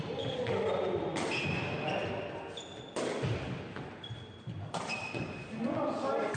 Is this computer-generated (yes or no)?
no